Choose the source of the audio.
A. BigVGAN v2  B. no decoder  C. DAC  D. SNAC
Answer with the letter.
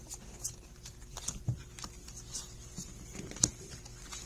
B